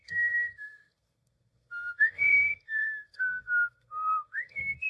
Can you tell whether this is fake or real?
fake